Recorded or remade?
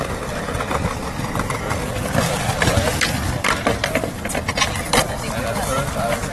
recorded